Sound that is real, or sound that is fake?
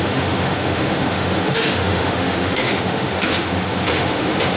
fake